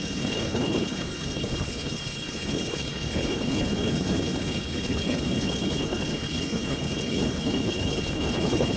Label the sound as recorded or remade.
remade